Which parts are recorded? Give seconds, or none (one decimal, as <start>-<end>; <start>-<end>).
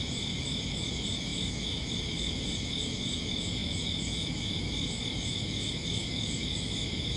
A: none